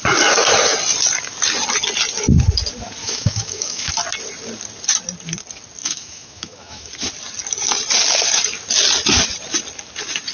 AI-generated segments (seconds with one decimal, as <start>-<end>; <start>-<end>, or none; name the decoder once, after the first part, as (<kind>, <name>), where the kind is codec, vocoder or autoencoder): 3.0-3.9 (autoencoder, DAC-VAE); 5.8-6.9